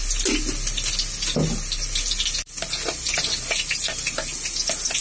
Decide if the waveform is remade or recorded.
recorded